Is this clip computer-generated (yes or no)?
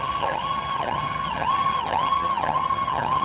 yes